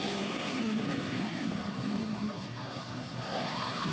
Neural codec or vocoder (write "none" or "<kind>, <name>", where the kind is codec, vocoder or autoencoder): codec, SNAC